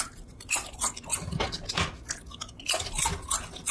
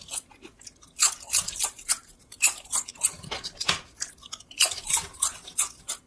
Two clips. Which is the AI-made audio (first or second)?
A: second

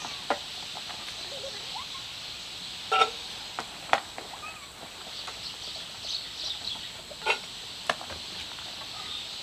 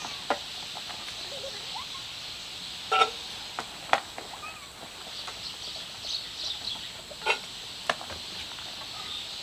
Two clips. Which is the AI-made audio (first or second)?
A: first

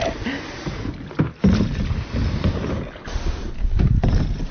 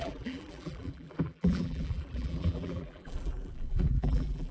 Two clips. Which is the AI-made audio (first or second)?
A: second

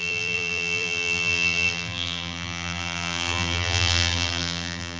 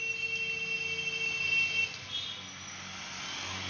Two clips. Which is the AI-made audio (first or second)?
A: first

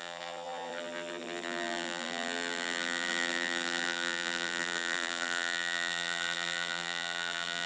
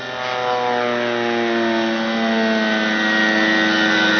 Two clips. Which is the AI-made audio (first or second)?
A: first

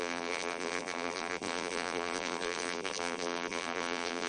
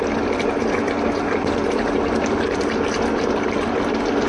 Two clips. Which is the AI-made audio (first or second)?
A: first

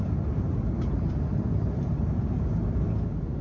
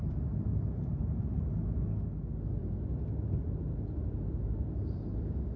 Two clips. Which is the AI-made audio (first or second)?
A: first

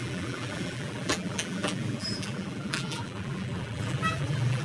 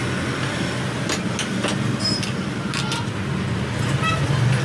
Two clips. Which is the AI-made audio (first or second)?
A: first